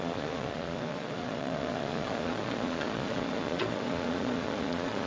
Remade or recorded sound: remade